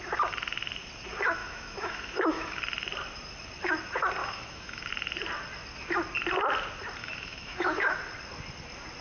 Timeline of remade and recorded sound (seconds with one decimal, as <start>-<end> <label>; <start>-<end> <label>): 0.0-1.4 recorded; 1.4-2.6 remade; 2.6-4.2 recorded; 4.2-4.9 remade; 4.9-7.0 recorded; 7.0-8.0 remade; 8.0-9.0 recorded